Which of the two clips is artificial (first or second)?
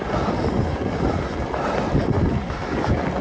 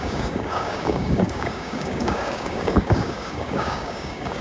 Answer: second